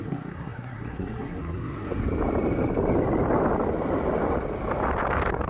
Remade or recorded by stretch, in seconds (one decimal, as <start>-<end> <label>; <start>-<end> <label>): 0.0-2.0 remade; 2.0-5.5 recorded